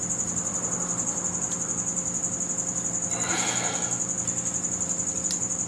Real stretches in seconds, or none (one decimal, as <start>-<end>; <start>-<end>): 0.0-5.7